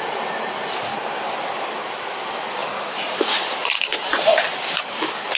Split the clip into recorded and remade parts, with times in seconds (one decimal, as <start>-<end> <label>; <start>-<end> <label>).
0.0-0.9 recorded; 0.9-2.0 remade; 2.0-2.6 recorded; 2.6-4.1 remade; 4.1-5.4 recorded